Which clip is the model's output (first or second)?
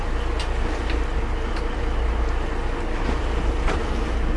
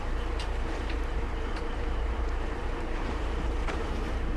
second